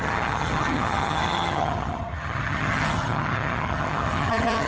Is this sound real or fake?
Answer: fake